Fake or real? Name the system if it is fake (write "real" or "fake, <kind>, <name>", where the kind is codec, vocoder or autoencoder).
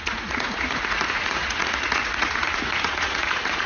fake, vocoder, Vocos